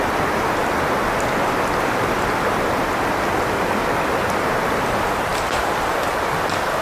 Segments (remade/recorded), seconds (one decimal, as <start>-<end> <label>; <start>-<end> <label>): 0.0-5.3 recorded; 5.3-6.0 remade; 6.0-6.8 recorded